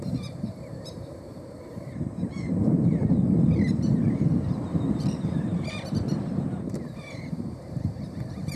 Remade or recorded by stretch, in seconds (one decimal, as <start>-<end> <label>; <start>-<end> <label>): 0.0-3.0 remade; 3.0-3.6 recorded; 3.6-8.6 remade